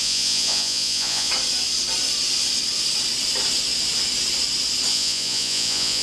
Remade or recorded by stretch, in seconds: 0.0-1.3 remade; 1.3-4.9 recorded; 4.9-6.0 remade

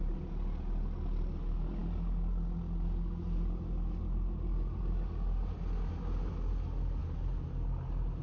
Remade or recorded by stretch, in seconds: 0.0-8.2 recorded

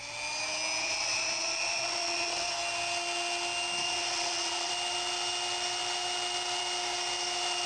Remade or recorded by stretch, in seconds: 0.0-0.8 recorded; 0.8-2.5 remade; 2.5-3.8 recorded; 3.8-4.7 remade; 4.7-7.7 recorded

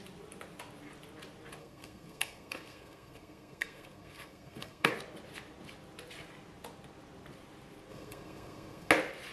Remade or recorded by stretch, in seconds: 0.0-1.6 recorded; 1.6-4.9 remade; 4.9-7.9 recorded; 7.9-8.9 remade; 8.9-9.3 recorded

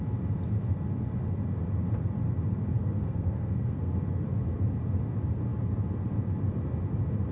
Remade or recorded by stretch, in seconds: 0.0-2.8 recorded; 2.8-4.0 remade; 4.0-7.3 recorded

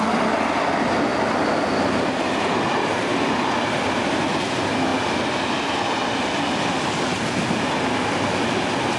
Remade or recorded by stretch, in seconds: 0.0-9.0 recorded